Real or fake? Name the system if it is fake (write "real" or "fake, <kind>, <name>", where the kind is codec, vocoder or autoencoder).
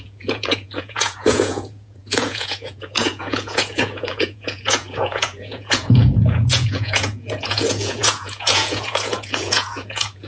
fake, vocoder, Vocos